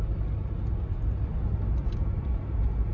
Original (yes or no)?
yes